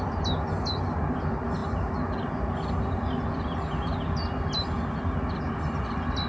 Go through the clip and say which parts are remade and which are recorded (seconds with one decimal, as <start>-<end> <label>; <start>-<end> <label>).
0.0-6.3 recorded